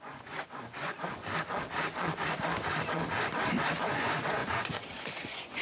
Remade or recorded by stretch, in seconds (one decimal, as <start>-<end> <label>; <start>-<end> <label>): 0.0-1.2 remade; 1.2-3.7 recorded; 3.7-5.6 remade